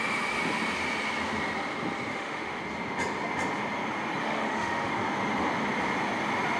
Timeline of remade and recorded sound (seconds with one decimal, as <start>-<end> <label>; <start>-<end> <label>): 0.0-2.1 recorded; 2.1-2.6 remade; 2.6-4.2 recorded; 4.2-4.9 remade; 4.9-6.6 recorded